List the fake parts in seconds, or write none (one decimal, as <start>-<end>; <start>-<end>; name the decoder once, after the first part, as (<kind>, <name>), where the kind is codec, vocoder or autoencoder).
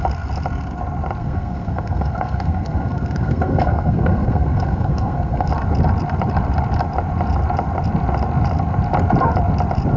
1.2-5.5 (codec, SNAC)